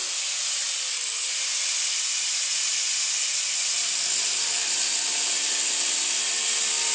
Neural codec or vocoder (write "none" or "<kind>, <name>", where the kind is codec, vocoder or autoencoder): none